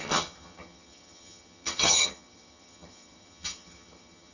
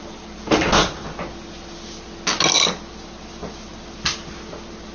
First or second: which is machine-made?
first